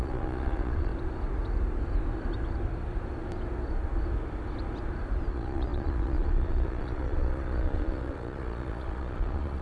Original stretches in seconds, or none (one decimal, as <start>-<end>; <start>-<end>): 0.9-5.3

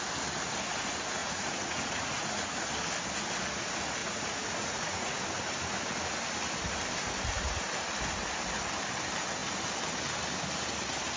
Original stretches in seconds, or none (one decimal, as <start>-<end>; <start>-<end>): 0.0-1.2; 2.7-4.0; 5.2-11.2

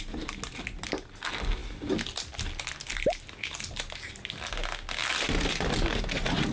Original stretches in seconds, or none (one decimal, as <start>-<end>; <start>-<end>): 0.0-6.5

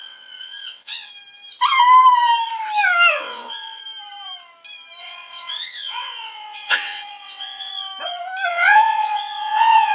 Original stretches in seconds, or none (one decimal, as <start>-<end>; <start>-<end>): 1.1-3.1; 3.8-5.0; 7.7-8.5

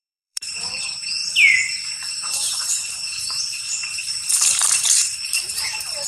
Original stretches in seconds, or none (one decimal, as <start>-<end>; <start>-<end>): 1.2-2.1

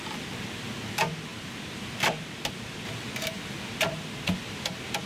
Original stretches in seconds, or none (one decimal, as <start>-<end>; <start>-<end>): 0.0-5.1

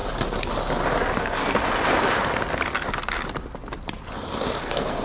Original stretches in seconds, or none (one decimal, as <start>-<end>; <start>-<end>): 0.0-1.2; 1.6-4.6